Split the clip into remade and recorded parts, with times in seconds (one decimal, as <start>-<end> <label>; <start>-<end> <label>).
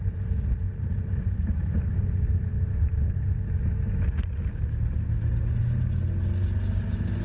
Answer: 0.0-7.2 recorded